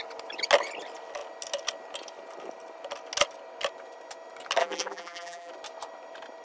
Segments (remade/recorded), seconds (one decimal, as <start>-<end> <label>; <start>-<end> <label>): 0.0-4.6 recorded; 4.6-5.5 remade; 5.5-6.4 recorded